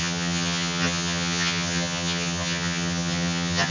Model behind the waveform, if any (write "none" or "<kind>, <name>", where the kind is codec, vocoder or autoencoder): vocoder, HiFi-GAN